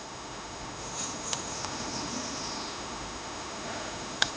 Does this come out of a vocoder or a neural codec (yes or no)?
yes